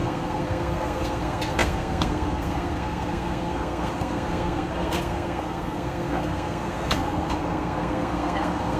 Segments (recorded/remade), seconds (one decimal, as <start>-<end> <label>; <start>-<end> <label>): 0.0-8.8 remade